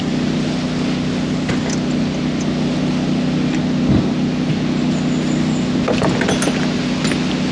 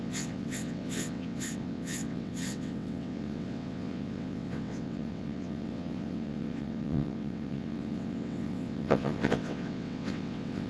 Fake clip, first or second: second